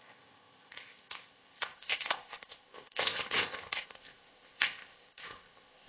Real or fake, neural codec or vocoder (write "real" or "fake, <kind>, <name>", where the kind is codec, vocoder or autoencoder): fake, codec, ZipCodec